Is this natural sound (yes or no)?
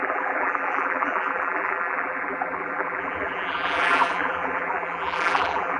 no